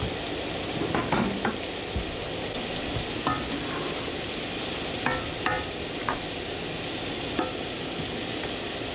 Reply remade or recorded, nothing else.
recorded